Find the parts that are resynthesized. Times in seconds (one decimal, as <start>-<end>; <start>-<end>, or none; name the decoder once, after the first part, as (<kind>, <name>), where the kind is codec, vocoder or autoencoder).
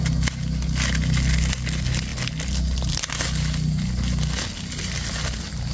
none